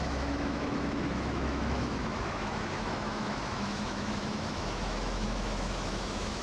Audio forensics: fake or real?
fake